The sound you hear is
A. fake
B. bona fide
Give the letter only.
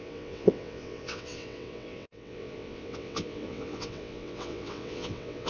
A